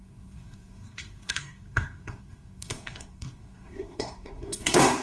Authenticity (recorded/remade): remade